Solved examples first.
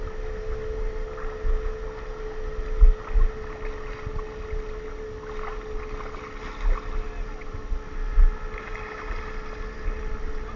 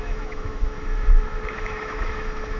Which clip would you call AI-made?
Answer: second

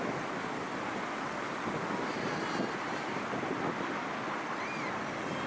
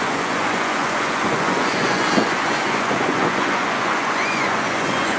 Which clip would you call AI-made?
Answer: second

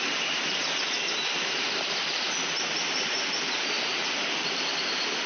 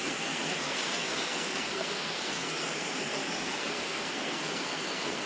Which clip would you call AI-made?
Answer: second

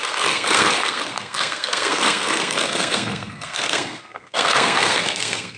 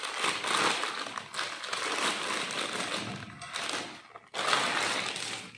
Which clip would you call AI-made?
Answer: first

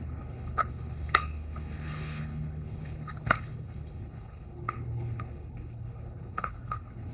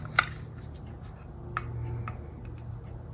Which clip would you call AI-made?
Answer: first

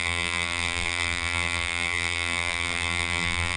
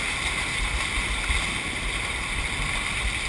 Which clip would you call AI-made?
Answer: first